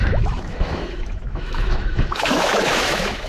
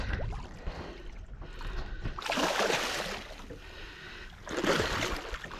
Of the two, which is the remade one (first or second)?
first